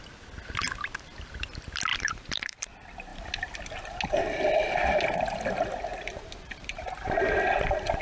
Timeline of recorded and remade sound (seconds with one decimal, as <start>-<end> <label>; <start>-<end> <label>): 0.0-1.9 recorded; 1.9-2.7 remade; 2.7-5.9 recorded; 5.9-7.4 remade; 7.4-8.0 recorded